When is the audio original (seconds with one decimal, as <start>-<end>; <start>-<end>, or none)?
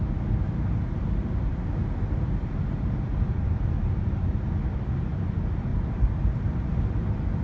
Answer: 0.0-1.5; 4.5-5.7; 6.7-7.4